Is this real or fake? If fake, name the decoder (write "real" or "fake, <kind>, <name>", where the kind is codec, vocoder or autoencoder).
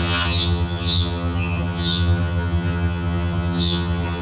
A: fake, vocoder, HiFi-GAN